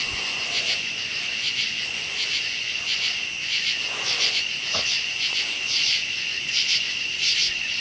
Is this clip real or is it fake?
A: fake